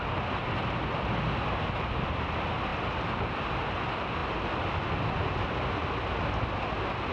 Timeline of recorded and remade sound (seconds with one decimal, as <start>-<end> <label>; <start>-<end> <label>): 0.0-7.1 recorded